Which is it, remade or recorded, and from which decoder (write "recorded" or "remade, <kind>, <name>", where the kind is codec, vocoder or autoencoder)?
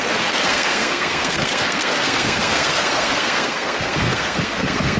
remade, codec, SNAC